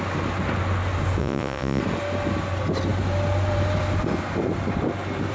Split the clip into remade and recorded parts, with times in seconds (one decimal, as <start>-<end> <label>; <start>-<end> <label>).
0.0-1.2 recorded; 1.2-1.8 remade; 1.8-5.3 recorded